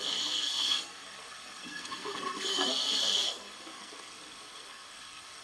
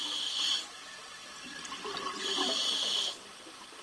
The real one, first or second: second